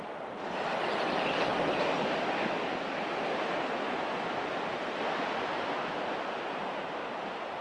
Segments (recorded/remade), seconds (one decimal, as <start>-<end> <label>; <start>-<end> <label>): 0.0-7.6 recorded